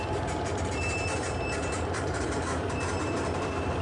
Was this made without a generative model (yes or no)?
no